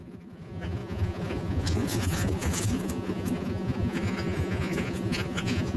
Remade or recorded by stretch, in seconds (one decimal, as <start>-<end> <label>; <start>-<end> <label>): 0.0-5.8 remade